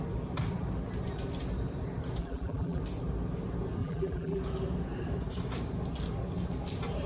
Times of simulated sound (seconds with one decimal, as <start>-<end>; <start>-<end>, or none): 2.2-2.8; 3.8-4.4